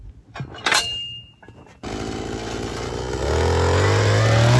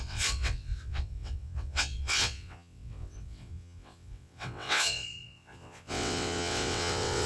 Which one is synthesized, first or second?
second